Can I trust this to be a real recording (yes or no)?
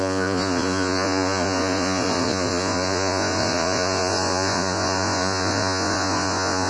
no